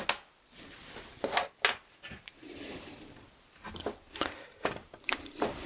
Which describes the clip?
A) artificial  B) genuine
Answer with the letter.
B